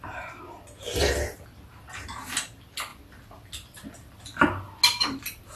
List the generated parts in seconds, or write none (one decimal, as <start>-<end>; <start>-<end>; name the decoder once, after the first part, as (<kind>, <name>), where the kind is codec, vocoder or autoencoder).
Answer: none